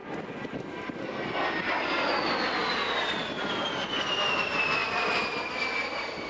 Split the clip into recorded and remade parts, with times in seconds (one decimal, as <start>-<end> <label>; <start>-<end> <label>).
0.0-6.3 recorded